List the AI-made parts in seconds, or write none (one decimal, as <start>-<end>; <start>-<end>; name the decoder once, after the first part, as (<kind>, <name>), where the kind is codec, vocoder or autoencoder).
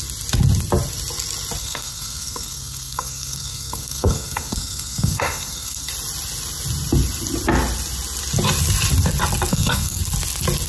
1.6-5.9 (codec, SNAC); 9.5-10.0